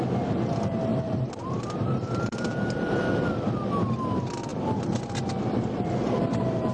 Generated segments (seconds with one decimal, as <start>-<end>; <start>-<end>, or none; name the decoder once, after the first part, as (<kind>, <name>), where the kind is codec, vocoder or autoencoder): 0.9-3.1 (vocoder, BigVGAN v2)